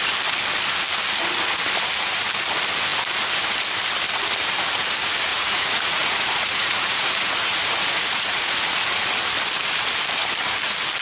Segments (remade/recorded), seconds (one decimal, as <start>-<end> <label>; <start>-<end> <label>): 0.0-5.3 recorded; 5.3-9.0 remade; 9.0-11.0 recorded

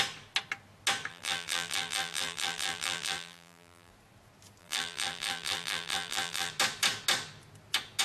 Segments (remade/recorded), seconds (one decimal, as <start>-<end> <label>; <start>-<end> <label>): 0.0-1.1 recorded; 1.1-3.9 remade; 3.9-4.6 recorded; 4.6-6.5 remade; 6.5-8.0 recorded

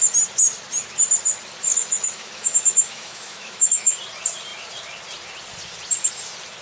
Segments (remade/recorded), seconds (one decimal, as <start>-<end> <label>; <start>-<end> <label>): 0.0-1.7 recorded; 1.7-3.9 remade; 3.9-6.6 recorded

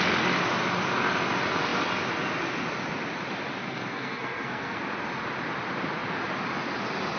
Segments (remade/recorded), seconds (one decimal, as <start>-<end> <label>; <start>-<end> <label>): 0.0-3.6 recorded; 3.6-4.8 remade; 4.8-7.2 recorded

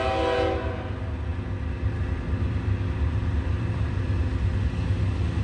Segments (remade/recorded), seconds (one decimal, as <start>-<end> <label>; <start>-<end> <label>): 0.0-1.3 recorded; 1.3-4.5 remade; 4.5-5.4 recorded